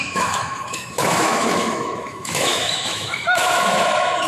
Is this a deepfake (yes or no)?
yes